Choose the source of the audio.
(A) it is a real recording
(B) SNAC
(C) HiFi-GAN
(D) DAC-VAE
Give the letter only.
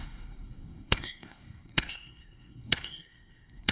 B